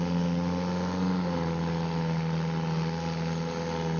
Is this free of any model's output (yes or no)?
yes